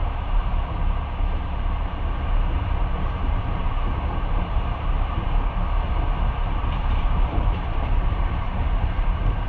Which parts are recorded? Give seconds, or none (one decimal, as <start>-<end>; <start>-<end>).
0.5-2.8; 3.8-6.7